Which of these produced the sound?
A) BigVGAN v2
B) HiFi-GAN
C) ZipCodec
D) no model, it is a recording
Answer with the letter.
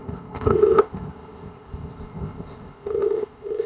C